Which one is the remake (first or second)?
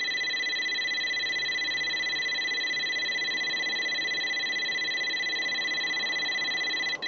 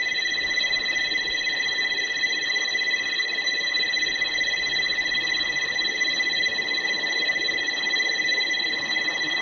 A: second